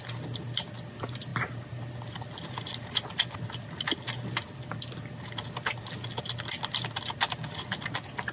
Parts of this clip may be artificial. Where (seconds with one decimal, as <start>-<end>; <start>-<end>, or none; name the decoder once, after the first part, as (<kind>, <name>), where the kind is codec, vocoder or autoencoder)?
none